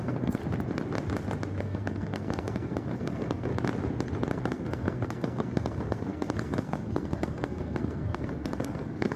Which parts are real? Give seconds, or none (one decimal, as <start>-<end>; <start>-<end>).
0.4-1.6; 3.5-4.3